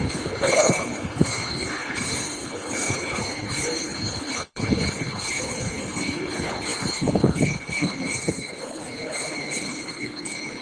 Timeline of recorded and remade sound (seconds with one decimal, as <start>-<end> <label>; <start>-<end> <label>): 0.0-10.6 remade